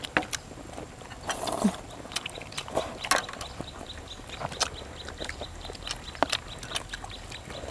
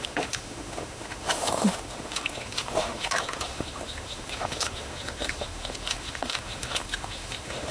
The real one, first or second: first